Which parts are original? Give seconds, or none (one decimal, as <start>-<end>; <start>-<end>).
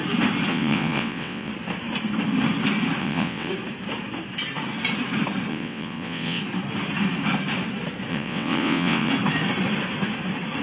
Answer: 0.0-0.5; 1.5-3.0; 3.5-5.5; 6.4-8.1; 9.1-10.6